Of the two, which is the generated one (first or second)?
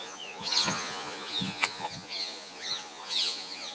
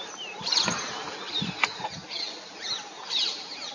first